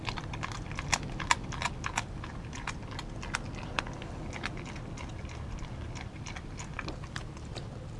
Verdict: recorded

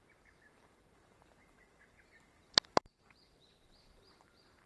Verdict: remade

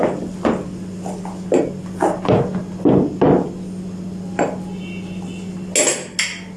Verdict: recorded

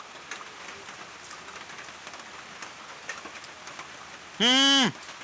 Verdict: recorded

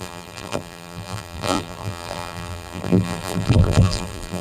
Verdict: remade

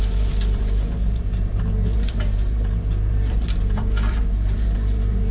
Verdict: remade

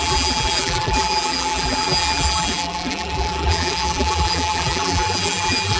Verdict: remade